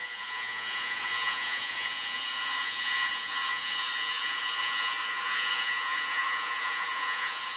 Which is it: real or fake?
fake